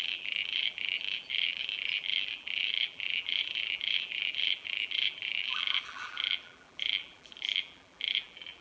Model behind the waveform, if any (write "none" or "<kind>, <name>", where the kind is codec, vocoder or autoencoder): vocoder, BigVGAN v2